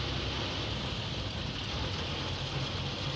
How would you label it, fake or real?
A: real